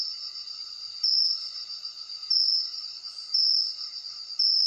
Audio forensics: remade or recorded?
recorded